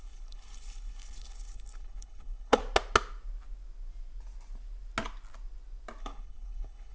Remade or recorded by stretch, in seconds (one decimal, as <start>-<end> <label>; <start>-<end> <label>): 0.0-2.6 remade; 2.6-6.0 recorded; 6.0-6.9 remade